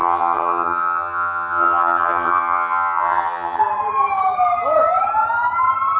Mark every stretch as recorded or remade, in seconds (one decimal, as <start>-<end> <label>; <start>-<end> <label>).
0.0-3.6 remade; 3.6-6.0 recorded